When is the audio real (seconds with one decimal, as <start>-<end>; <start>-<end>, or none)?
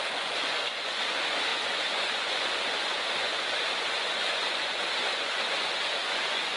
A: none